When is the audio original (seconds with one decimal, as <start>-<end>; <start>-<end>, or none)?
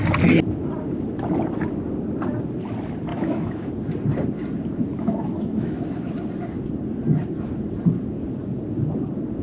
0.0-3.1; 3.7-4.9; 5.8-9.4